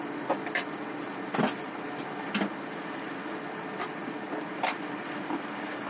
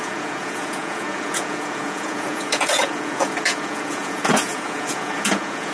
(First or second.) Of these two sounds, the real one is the first